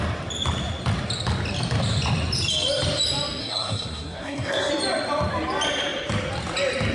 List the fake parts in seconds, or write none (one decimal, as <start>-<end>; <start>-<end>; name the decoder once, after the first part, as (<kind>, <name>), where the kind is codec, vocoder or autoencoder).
3.4-4.7 (codec, SNAC)